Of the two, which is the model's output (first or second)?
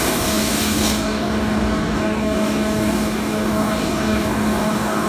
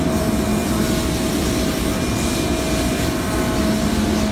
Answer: first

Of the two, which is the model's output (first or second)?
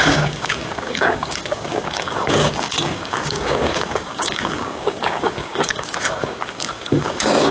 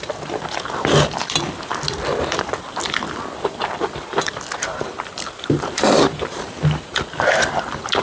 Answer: first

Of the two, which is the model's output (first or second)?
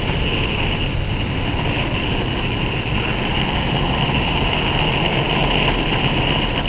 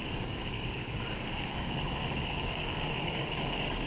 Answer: second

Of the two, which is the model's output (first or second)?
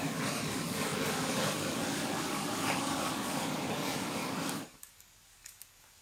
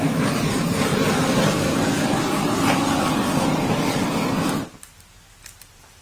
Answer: first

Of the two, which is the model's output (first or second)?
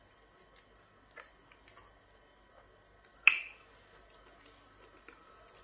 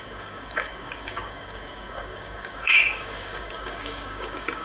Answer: second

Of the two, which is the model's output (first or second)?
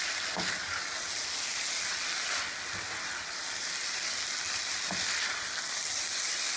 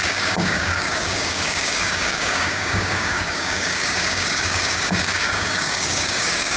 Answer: second